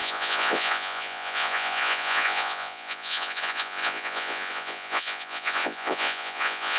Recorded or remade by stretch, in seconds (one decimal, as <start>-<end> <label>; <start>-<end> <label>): 0.0-6.8 remade